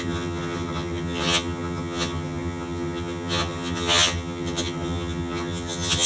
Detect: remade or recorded remade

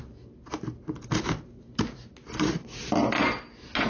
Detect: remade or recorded recorded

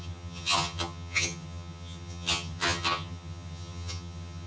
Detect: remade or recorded remade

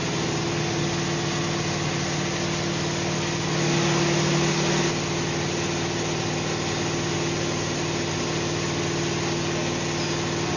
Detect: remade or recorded recorded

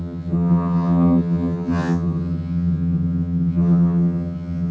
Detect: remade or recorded remade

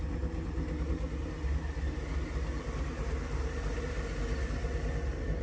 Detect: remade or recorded recorded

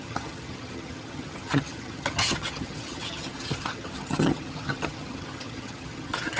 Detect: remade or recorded remade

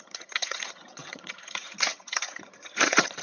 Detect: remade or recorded remade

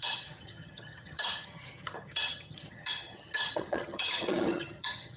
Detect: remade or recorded remade